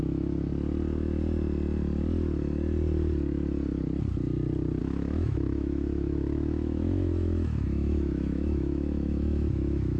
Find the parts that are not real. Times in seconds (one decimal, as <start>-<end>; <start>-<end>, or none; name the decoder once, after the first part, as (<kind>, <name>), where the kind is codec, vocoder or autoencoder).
0.0-0.5 (autoencoder, DAC-VAE); 4.8-10.0